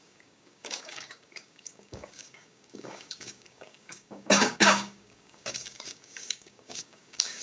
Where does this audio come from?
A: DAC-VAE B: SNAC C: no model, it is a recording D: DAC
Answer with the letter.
D